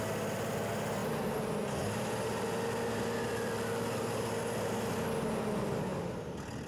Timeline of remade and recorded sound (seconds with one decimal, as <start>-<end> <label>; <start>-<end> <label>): 0.0-6.7 recorded

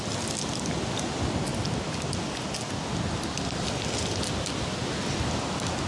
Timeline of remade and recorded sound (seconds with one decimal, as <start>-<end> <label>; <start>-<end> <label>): 0.0-5.9 recorded

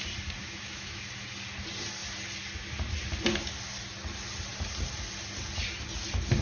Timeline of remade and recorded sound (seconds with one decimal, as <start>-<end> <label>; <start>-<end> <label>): 0.0-0.4 recorded; 0.4-1.0 remade; 1.0-6.4 recorded

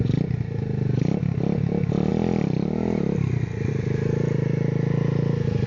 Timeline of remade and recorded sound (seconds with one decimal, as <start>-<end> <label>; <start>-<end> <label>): 0.0-5.7 recorded

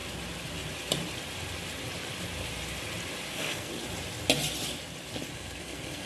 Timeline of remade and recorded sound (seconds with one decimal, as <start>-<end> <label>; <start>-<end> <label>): 0.0-3.3 recorded; 3.3-3.7 remade; 3.7-5.3 recorded; 5.3-6.1 remade